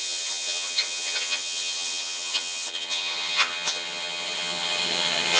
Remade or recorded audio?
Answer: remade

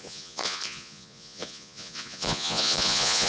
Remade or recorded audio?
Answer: remade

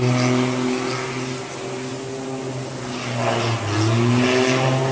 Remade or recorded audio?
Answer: recorded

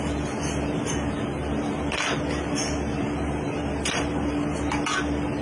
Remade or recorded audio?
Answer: recorded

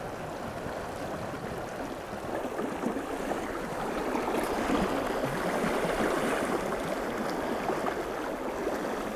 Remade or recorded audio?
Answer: recorded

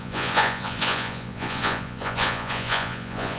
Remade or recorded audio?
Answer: remade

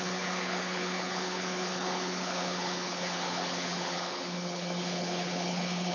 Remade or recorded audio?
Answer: remade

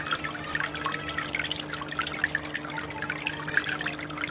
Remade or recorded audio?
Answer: recorded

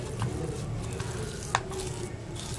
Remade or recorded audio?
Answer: recorded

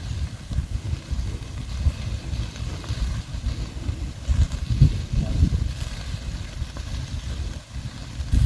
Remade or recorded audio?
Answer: recorded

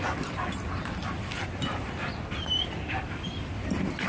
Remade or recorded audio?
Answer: recorded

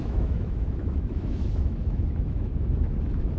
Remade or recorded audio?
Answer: remade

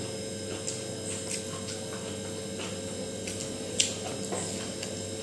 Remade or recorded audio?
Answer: recorded